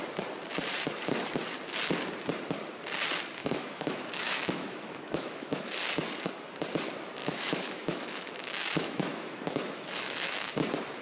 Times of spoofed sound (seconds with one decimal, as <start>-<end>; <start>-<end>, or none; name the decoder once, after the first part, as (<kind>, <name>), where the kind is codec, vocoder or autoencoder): 3.4-5.7 (autoencoder, DAC-VAE); 7.2-10.5